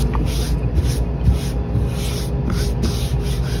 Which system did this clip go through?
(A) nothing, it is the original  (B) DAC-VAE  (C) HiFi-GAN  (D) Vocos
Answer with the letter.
A